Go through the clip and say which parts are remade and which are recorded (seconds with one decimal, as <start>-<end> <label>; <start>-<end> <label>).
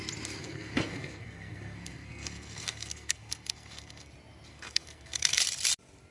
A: 0.0-0.4 recorded; 0.4-4.1 remade; 4.1-4.5 recorded; 4.5-5.4 remade; 5.4-6.1 recorded